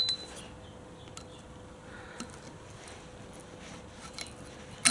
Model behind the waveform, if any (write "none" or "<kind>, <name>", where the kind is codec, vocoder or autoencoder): none